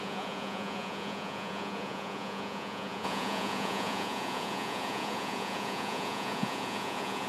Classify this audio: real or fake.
fake